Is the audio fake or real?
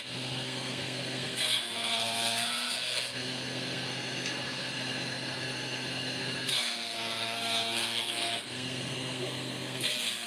fake